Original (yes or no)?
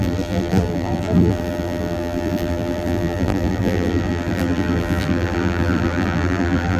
no